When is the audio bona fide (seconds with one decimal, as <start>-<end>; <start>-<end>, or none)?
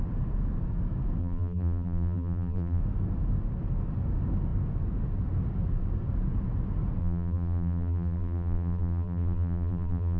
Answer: 0.0-1.2; 2.8-7.0